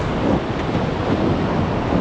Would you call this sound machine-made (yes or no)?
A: no